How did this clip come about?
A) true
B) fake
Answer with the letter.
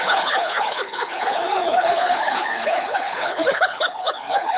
B